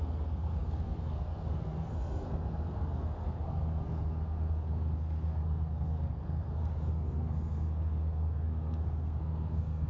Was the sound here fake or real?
fake